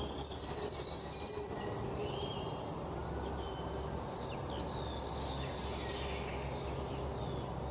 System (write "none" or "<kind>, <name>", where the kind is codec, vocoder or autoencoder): none